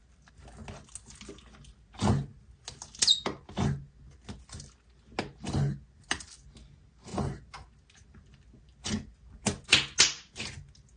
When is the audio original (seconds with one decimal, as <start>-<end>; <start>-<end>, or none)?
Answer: 0.0-11.0